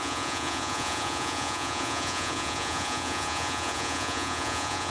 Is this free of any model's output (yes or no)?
no